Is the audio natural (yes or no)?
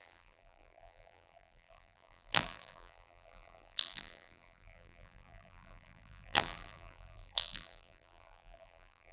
no